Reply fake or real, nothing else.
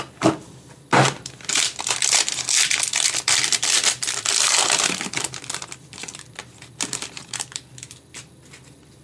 fake